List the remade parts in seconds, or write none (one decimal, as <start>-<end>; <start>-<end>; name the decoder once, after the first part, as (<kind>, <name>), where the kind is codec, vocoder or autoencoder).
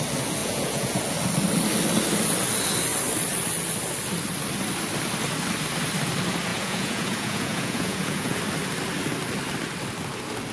0.4-1.0 (vocoder, Vocos); 6.5-8.4